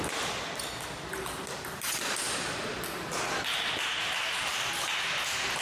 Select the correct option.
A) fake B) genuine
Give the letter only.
B